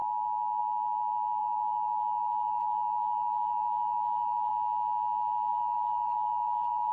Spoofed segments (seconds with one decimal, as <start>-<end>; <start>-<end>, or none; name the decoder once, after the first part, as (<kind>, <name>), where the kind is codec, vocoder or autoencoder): 1.4-4.5 (autoencoder, DAC-VAE); 5.5-6.9